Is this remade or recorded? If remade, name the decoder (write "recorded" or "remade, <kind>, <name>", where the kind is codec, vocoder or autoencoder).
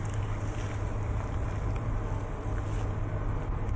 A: recorded